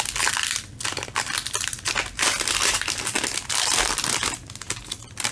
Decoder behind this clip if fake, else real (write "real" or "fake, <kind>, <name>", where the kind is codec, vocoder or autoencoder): real